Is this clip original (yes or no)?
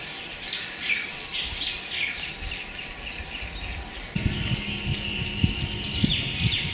yes